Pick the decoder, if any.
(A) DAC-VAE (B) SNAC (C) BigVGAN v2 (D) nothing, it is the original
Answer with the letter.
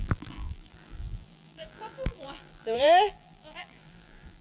C